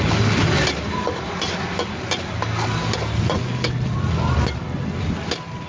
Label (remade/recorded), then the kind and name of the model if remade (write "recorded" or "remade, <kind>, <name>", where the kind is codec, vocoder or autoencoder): recorded